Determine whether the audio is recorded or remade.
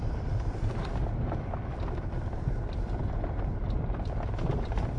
remade